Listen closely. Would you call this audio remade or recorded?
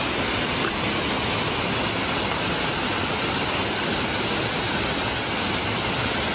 recorded